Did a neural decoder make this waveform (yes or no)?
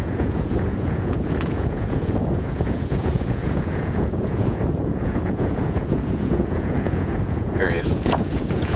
yes